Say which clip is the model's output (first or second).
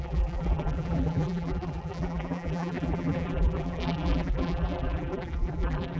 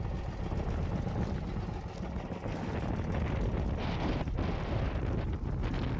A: first